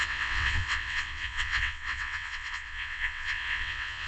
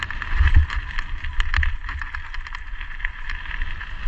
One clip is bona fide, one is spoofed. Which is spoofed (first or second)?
first